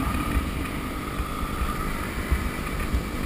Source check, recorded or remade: recorded